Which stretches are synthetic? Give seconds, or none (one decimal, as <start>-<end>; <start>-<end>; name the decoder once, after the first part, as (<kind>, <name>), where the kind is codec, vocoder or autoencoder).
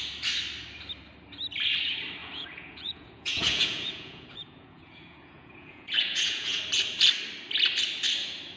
2.2-6.6 (vocoder, Vocos)